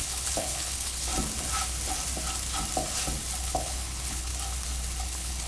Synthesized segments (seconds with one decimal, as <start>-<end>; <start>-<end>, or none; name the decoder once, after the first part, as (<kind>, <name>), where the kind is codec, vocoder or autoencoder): 0.0-1.1 (codec, HILCodec); 3.4-4.3; 5.0-5.5